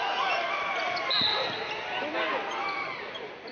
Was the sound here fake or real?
real